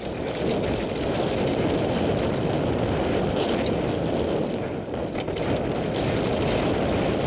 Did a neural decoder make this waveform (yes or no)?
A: no